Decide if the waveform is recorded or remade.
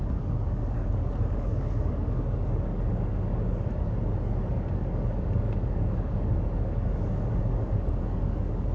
remade